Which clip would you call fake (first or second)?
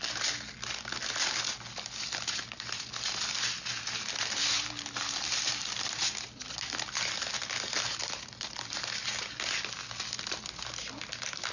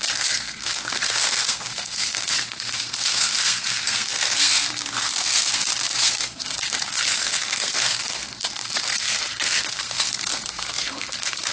second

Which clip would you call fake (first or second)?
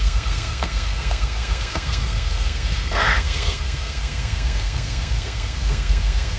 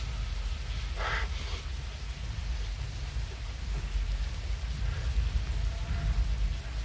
first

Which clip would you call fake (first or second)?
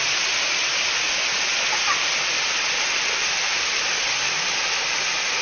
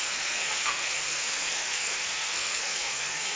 second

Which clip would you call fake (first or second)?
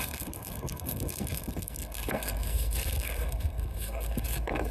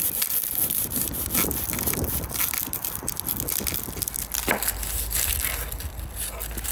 first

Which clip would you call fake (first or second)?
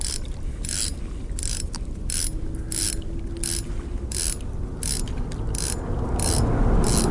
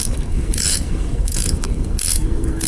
second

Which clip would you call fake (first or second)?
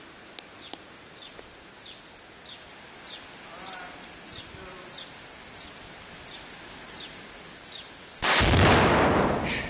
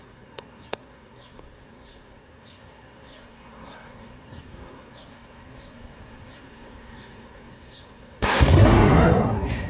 second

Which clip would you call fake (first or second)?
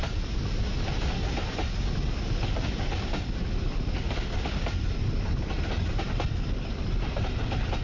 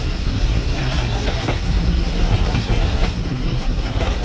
second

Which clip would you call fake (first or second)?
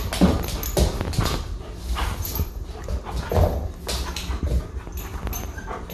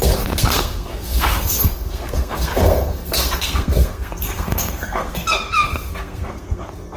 second